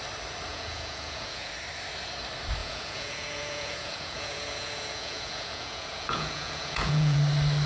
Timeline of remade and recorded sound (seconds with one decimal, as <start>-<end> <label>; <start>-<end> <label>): 0.0-0.5 recorded; 0.5-1.5 remade; 1.5-2.6 recorded; 2.6-7.2 remade; 7.2-7.7 recorded